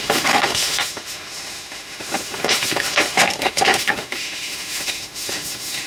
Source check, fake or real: fake